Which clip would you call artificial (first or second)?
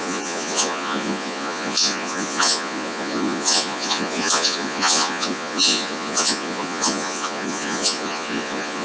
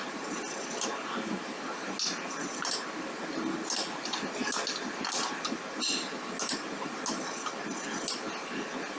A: first